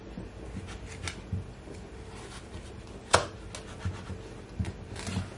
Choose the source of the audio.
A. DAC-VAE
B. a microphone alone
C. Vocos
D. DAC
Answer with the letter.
B